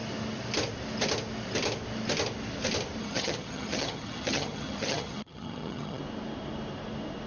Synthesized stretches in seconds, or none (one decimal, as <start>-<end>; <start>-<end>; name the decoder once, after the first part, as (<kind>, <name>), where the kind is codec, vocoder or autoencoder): 3.0-6.0 (vocoder, HiFi-GAN)